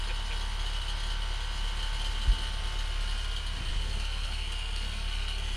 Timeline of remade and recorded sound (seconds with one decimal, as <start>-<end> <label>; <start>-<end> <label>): 0.0-3.7 recorded; 3.7-5.6 remade